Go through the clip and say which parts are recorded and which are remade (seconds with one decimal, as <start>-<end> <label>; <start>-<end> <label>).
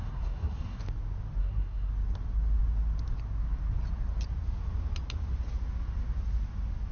0.0-0.8 remade; 0.8-1.4 recorded; 1.4-1.9 remade; 1.9-6.9 recorded